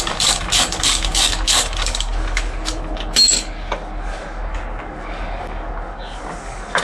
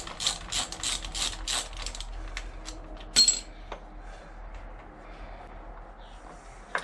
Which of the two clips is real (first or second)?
second